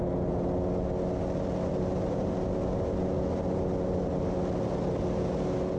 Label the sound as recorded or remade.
recorded